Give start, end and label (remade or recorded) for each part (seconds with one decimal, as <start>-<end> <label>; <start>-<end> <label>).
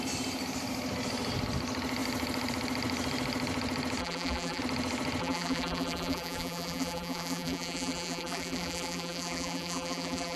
0.0-4.0 recorded; 4.0-4.6 remade; 4.6-5.2 recorded; 5.2-10.4 remade